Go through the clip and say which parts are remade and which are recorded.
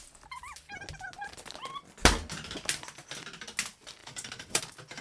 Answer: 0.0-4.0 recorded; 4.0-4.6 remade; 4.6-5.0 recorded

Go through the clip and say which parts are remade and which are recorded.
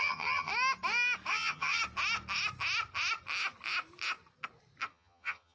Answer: 0.0-0.5 remade; 0.5-1.3 recorded; 1.3-1.8 remade; 1.8-4.9 recorded; 4.9-5.5 remade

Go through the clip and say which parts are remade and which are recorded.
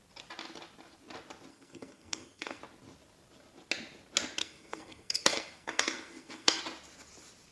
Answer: 0.0-1.5 recorded; 1.5-2.6 remade; 2.6-4.4 recorded; 4.4-6.6 remade; 6.6-7.5 recorded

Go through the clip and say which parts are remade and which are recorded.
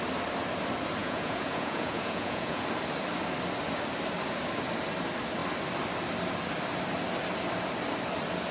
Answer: 0.0-1.0 recorded; 1.0-2.6 remade; 2.6-8.5 recorded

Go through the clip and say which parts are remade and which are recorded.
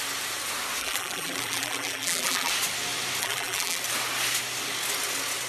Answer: 0.0-0.8 recorded; 0.8-2.5 remade; 2.5-3.2 recorded; 3.2-3.8 remade; 3.8-5.5 recorded